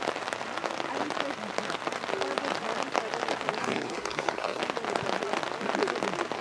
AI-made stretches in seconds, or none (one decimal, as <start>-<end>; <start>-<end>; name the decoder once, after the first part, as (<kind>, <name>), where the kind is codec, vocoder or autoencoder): 3.6-4.6 (codec, SNAC)